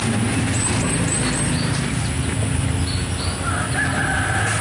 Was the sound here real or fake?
real